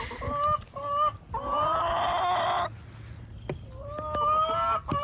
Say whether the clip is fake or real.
real